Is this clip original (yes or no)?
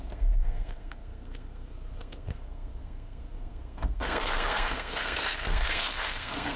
no